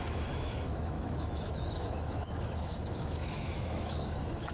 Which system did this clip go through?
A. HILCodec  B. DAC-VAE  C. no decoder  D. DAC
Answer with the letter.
B